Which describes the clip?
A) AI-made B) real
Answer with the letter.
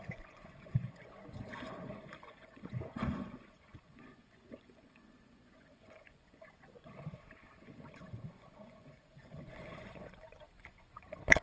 A